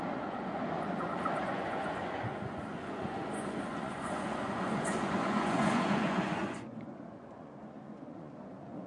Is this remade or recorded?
remade